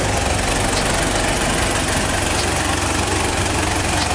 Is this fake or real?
real